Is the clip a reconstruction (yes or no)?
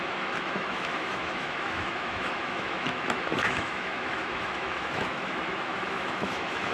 yes